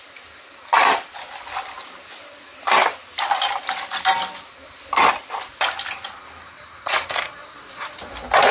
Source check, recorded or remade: recorded